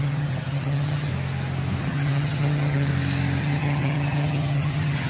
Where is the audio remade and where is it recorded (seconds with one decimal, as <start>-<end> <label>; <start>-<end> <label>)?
0.0-1.1 remade; 1.1-1.8 recorded; 1.8-2.9 remade; 2.9-3.4 recorded; 3.4-5.1 remade